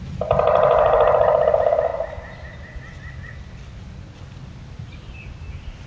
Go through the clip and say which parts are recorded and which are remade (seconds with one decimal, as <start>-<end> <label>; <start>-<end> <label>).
0.0-5.9 recorded